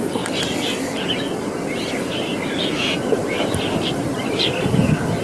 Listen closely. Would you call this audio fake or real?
real